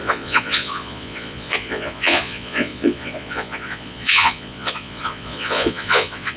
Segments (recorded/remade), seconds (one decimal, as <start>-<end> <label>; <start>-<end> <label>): 0.0-6.4 remade